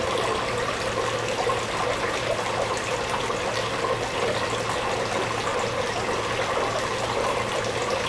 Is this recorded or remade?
recorded